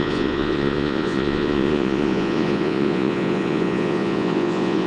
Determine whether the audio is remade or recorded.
remade